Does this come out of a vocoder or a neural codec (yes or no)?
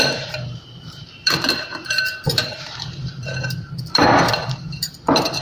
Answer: yes